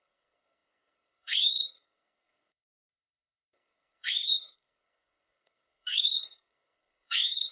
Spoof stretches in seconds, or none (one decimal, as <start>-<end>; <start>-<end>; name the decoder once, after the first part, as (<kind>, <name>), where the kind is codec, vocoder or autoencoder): 0.0-7.5 (codec, SNAC)